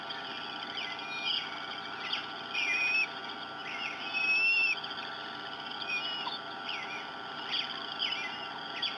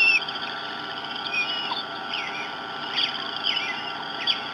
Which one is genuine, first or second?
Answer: first